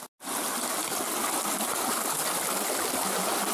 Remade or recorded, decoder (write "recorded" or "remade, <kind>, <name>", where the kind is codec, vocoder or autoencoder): recorded